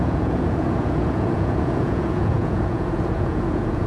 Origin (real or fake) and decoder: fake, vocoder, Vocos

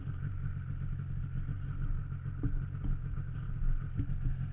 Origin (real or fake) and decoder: real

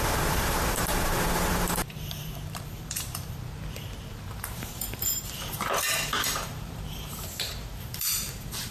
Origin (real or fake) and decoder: fake, vocoder, BigVGAN v2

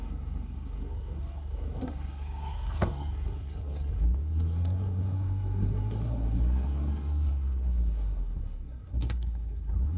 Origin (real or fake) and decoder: fake, codec, SNAC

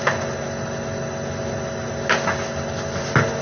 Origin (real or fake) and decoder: real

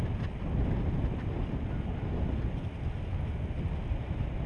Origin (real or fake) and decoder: real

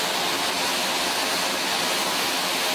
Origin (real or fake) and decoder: real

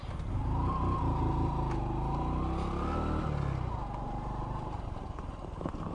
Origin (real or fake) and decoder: real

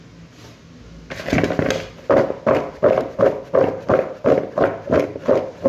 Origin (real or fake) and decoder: real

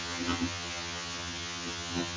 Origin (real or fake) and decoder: fake, vocoder, HiFi-GAN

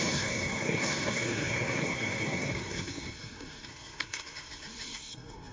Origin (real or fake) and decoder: fake, codec, SNAC